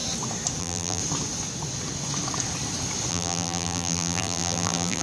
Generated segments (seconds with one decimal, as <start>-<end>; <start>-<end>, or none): 0.6-1.0; 3.1-5.0